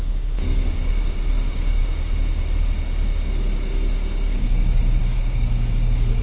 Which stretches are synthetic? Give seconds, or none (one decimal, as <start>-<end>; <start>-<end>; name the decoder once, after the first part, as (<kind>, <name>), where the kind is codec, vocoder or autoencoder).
0.0-1.8 (codec, DAC); 3.3-6.2